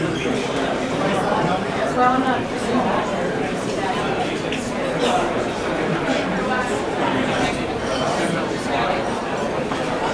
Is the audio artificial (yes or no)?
yes